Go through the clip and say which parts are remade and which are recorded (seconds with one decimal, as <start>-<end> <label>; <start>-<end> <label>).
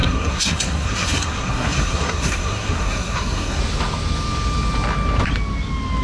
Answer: 0.0-3.6 remade; 3.6-6.0 recorded